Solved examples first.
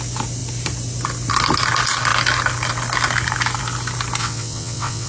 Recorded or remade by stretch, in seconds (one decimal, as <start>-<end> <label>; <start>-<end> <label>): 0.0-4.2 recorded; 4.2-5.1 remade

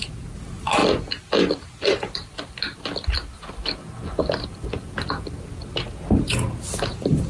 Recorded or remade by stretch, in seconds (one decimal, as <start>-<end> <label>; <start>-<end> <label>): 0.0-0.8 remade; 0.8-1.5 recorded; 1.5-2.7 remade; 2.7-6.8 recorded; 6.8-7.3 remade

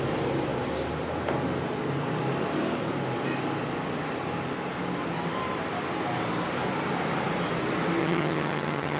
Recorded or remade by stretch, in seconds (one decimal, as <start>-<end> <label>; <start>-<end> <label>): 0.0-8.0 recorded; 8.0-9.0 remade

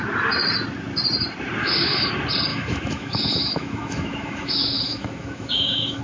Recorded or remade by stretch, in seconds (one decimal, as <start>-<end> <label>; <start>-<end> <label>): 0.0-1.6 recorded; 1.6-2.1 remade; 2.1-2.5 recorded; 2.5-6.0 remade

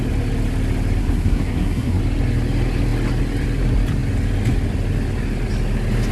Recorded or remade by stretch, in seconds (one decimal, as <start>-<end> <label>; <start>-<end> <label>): 0.0-1.0 recorded; 1.0-2.0 remade; 2.0-6.1 recorded